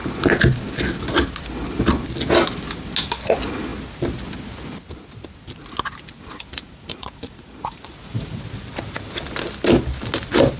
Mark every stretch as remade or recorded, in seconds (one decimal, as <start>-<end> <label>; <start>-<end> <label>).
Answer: 0.0-6.5 recorded; 6.5-8.4 remade; 8.4-10.6 recorded